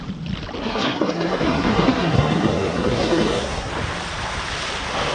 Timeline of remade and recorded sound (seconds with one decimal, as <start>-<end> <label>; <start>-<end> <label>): 0.0-0.6 recorded; 0.6-3.7 remade; 3.7-5.1 recorded